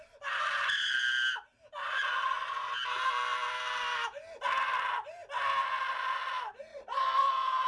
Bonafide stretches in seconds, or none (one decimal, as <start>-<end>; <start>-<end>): 0.0-1.8; 2.5-6.7